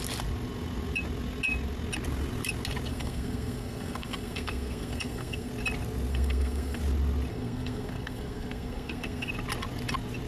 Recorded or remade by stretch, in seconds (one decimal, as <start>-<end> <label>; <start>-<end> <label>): 0.0-2.9 recorded; 2.9-5.5 remade; 5.5-6.1 recorded; 6.1-6.8 remade; 6.8-7.3 recorded; 7.3-9.3 remade; 9.3-10.3 recorded